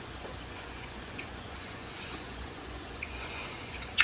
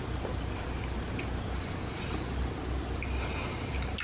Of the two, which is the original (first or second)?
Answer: second